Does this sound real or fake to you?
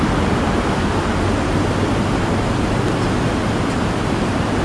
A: real